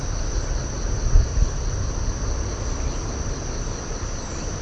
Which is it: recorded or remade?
recorded